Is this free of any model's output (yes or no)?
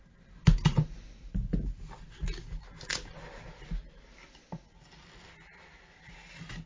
yes